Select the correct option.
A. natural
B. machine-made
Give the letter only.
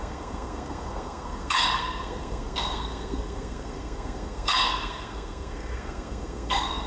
B